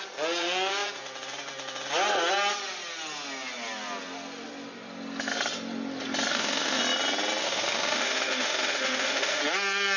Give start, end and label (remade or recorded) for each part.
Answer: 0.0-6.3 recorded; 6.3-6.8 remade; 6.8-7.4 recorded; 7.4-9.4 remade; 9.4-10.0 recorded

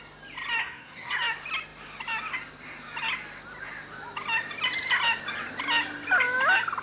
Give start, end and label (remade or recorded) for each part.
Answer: 0.0-0.6 recorded; 0.6-1.1 remade; 1.1-6.8 recorded

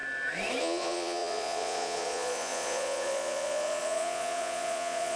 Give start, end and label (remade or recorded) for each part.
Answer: 0.0-0.6 recorded; 0.6-5.2 remade

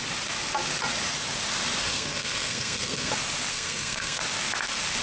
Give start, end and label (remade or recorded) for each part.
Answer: 0.0-1.8 recorded; 1.8-3.1 remade; 3.1-3.5 recorded; 3.5-4.2 remade; 4.2-5.0 recorded

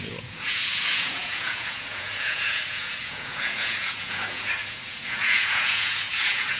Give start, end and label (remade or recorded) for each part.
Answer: 0.0-6.6 remade

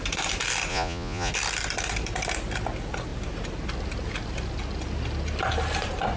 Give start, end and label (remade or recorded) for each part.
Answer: 0.0-0.7 recorded; 0.7-1.3 remade; 1.3-6.2 recorded